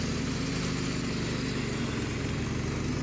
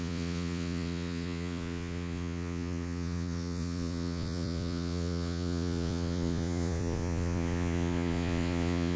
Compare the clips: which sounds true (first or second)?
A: first